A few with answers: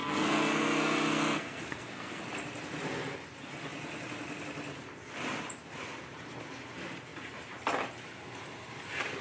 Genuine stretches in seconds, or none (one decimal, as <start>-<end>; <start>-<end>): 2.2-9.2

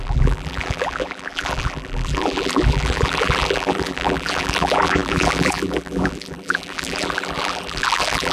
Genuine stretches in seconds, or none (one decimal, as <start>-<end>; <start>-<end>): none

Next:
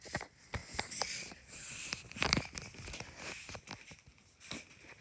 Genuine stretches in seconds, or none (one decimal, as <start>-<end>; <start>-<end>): 0.0-5.0

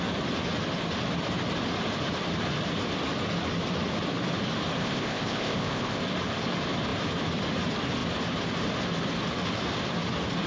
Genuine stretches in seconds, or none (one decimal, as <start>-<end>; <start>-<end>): 0.0-4.8; 6.0-10.5